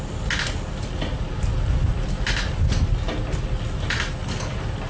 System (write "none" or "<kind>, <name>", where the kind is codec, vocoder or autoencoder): none